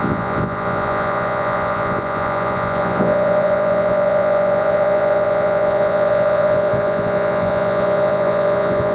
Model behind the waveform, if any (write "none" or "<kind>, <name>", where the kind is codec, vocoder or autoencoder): vocoder, Vocos